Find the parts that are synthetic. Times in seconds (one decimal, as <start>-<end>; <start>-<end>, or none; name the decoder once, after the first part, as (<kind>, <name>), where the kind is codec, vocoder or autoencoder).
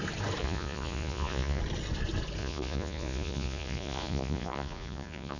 0.4-1.6 (vocoder, Vocos); 2.4-5.4